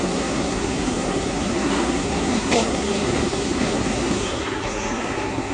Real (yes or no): no